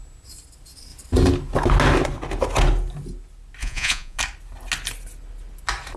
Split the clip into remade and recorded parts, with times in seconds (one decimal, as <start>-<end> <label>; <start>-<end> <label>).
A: 0.0-3.6 recorded; 3.6-4.2 remade; 4.2-6.0 recorded